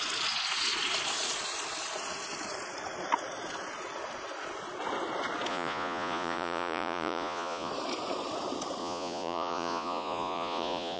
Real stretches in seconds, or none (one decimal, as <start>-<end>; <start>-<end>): 0.0-5.5; 7.7-8.8